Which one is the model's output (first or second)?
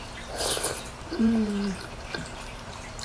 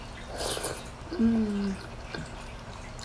first